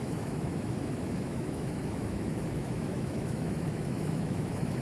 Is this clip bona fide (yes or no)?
no